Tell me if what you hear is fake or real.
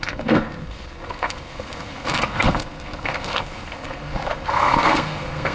fake